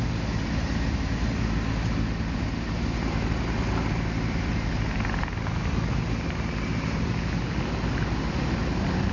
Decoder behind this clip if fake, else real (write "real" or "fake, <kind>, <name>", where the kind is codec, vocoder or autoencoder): real